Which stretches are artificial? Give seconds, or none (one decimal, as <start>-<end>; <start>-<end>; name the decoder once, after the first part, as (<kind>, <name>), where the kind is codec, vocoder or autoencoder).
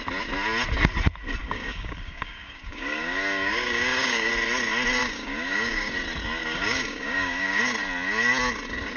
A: 1.4-4.3 (codec, DAC); 5.0-5.9; 6.4-7.6